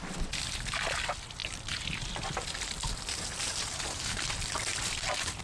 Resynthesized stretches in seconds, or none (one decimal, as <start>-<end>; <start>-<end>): none

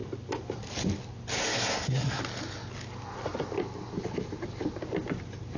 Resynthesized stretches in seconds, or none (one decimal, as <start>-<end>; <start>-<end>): 1.4-2.2

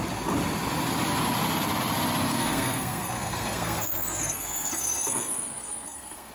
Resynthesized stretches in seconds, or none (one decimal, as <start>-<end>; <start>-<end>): 2.3-6.3

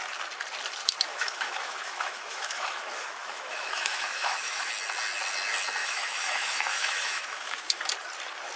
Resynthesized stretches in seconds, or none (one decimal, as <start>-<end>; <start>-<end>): 1.1-4.7; 5.8-7.8

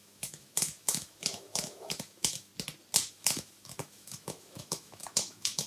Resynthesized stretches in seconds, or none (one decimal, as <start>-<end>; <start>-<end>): 0.0-2.5; 3.1-5.7

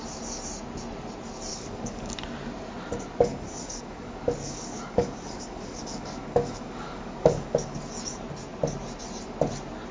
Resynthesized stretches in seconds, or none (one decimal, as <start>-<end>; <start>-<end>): 1.5-2.1; 3.3-7.8

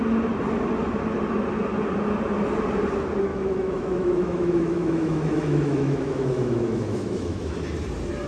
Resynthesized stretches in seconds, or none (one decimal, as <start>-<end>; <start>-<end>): 3.3-7.5